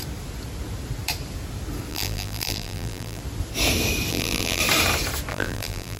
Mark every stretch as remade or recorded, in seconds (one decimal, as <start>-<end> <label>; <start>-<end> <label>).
0.0-1.9 recorded; 1.9-3.2 remade; 3.2-4.1 recorded; 4.1-4.6 remade; 4.6-5.3 recorded; 5.3-6.0 remade